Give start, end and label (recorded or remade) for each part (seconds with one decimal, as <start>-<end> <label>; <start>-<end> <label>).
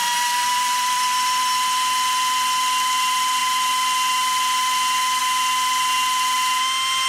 0.0-7.1 recorded